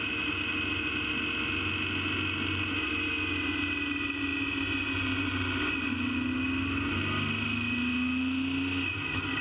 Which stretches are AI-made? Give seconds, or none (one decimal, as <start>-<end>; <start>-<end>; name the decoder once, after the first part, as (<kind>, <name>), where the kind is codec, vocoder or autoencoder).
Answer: none